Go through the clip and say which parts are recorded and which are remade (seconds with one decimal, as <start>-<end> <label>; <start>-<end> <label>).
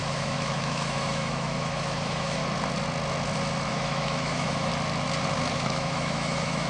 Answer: 0.0-2.4 remade; 2.4-3.7 recorded; 3.7-4.7 remade; 4.7-5.5 recorded; 5.5-6.7 remade